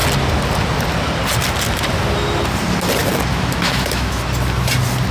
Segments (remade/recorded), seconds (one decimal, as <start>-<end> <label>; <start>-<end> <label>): 0.0-3.3 recorded; 3.3-4.2 remade; 4.2-5.1 recorded